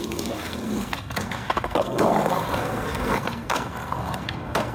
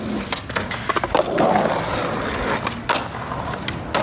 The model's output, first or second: first